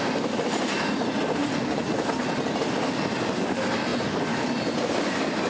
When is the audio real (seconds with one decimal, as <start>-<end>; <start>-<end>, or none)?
0.0-5.5